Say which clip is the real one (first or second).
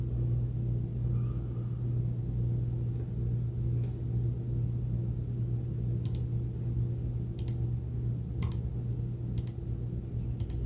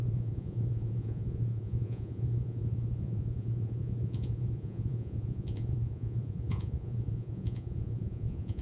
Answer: first